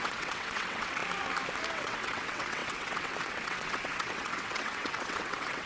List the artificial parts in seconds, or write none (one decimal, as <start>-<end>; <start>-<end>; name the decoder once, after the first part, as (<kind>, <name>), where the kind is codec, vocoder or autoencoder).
0.0-1.0 (vocoder, WaveNeXt); 1.7-5.7